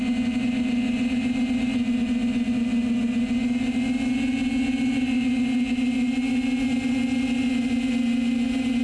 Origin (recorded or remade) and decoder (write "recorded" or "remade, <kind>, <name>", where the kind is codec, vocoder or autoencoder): recorded